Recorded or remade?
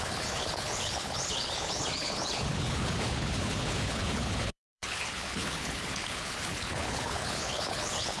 remade